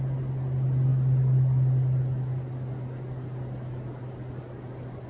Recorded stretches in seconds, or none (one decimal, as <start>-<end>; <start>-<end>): 0.0-5.1

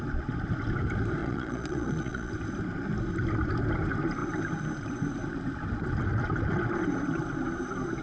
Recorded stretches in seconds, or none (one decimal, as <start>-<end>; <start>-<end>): 0.0-1.2; 2.3-8.0

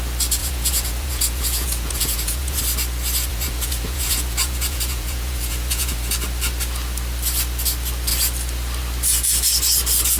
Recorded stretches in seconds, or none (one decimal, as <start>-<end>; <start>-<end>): 0.0-0.4; 2.6-3.3; 6.1-10.2

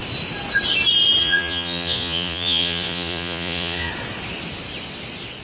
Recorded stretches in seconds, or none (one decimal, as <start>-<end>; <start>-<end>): 0.0-1.2; 3.9-5.4